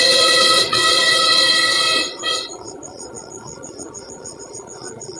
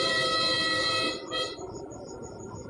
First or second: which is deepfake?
first